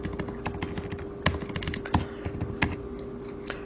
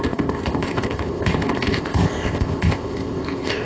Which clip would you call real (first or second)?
first